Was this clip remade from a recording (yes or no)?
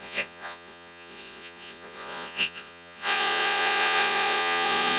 yes